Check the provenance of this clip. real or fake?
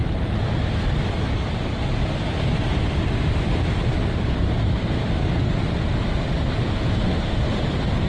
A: real